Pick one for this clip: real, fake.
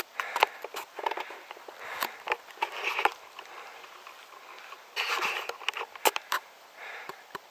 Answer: real